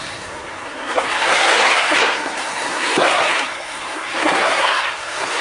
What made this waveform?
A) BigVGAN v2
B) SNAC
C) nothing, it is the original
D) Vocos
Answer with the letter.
B